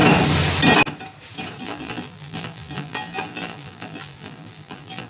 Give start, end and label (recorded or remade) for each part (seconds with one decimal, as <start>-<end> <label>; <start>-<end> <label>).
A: 0.0-1.6 recorded; 1.6-5.1 remade